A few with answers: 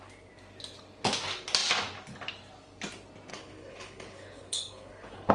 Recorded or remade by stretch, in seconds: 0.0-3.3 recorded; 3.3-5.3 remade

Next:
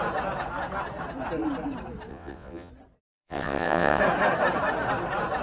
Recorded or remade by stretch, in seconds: 0.0-2.1 recorded; 2.1-2.7 remade; 2.7-3.1 recorded; 3.1-4.0 remade; 4.0-5.4 recorded

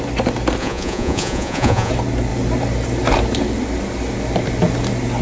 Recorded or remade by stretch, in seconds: 0.0-0.6 recorded; 0.6-1.9 remade; 1.9-5.2 recorded

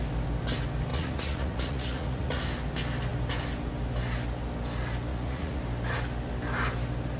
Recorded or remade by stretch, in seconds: 0.0-0.9 recorded; 0.9-2.4 remade; 2.4-5.1 recorded; 5.1-5.6 remade; 5.6-7.2 recorded

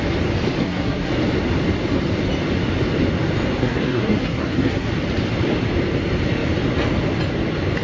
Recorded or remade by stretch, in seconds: 0.0-0.6 recorded; 0.6-1.1 remade; 1.1-3.6 recorded; 3.6-4.9 remade; 4.9-7.8 recorded

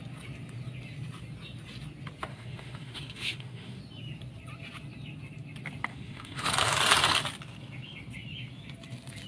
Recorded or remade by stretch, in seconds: 0.0-2.3 recorded; 2.3-3.8 remade; 3.8-5.9 recorded; 5.9-6.5 remade; 6.5-9.3 recorded

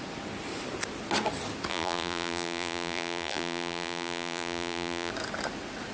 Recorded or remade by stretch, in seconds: 0.0-1.7 recorded; 1.7-5.1 remade; 5.1-5.9 recorded